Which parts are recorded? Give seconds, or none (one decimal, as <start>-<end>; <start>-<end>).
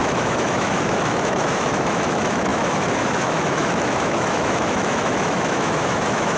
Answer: none